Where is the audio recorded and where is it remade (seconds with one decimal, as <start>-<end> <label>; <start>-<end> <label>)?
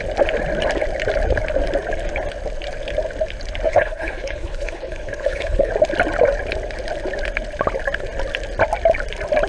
0.0-3.7 recorded; 3.7-5.7 remade; 5.7-9.5 recorded